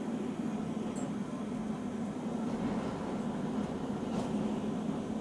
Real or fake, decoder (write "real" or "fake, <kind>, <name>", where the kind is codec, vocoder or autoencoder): real